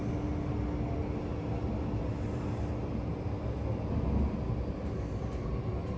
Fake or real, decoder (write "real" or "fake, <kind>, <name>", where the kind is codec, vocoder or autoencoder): real